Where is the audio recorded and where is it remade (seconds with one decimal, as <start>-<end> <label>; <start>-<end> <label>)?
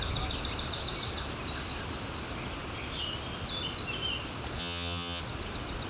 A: 0.0-4.6 recorded; 4.6-5.2 remade; 5.2-5.9 recorded